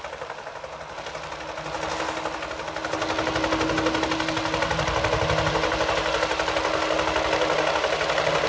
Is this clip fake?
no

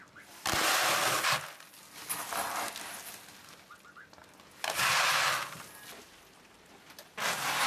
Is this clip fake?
no